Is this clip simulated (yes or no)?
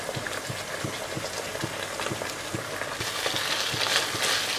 no